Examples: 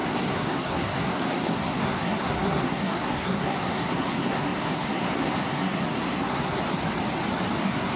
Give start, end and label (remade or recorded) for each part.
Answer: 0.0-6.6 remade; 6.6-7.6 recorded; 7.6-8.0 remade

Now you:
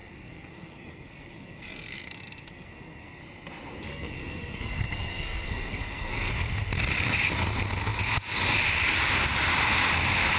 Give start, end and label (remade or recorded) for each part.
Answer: 0.0-3.2 remade; 3.2-3.9 recorded; 3.9-6.3 remade; 6.3-10.4 recorded